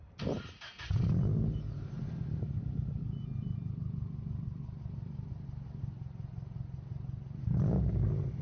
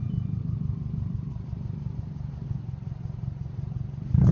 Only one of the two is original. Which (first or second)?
first